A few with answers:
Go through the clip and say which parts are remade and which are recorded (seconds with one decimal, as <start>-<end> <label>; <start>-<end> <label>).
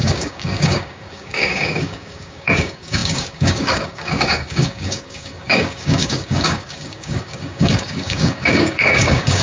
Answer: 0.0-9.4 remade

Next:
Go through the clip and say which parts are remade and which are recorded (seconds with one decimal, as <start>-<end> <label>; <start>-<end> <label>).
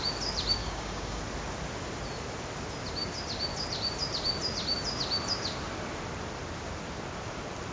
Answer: 0.0-0.6 recorded; 0.6-1.2 remade; 1.2-7.7 recorded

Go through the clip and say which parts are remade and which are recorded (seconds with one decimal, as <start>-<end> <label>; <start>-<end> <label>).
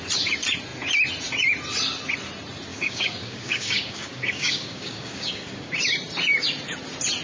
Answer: 0.0-2.7 recorded; 2.7-5.7 remade; 5.7-7.2 recorded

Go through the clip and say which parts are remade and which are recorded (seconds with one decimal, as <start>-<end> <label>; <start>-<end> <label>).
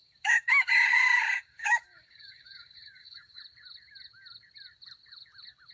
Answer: 0.0-3.4 remade; 3.4-5.7 recorded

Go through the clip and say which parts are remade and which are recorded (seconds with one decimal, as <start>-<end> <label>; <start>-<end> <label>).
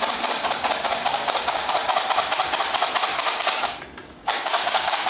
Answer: 0.0-1.1 recorded; 1.1-1.7 remade; 1.7-3.1 recorded; 3.1-3.8 remade; 3.8-4.2 recorded; 4.2-5.1 remade